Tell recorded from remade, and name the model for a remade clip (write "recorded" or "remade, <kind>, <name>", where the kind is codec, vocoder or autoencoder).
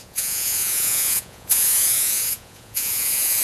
remade, vocoder, Vocos